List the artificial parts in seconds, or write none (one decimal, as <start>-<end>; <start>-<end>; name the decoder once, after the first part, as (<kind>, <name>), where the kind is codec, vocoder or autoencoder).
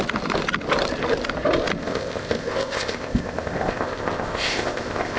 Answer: 1.8-5.2 (codec, ZipCodec)